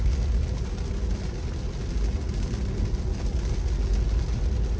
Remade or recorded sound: recorded